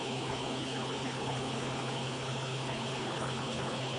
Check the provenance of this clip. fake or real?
fake